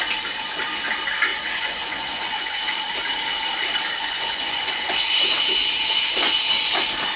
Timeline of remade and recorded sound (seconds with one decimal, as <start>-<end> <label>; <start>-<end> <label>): 0.0-1.3 recorded; 1.3-2.8 remade; 2.8-4.0 recorded; 4.0-5.0 remade; 5.0-7.2 recorded